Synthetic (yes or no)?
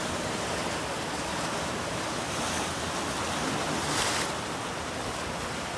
no